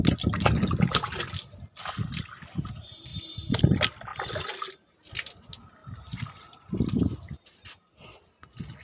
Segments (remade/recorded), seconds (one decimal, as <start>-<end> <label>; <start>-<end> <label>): 0.0-5.8 recorded; 5.8-6.7 remade; 6.7-8.8 recorded